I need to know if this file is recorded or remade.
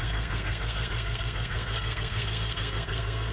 remade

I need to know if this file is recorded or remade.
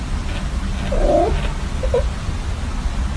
recorded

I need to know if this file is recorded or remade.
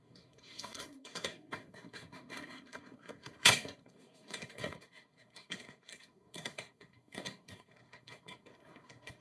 remade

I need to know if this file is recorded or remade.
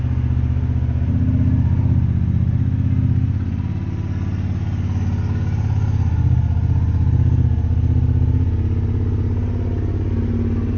recorded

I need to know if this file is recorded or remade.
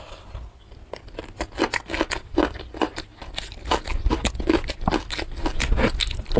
recorded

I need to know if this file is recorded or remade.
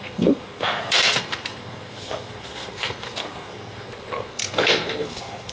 remade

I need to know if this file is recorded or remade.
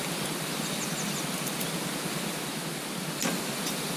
recorded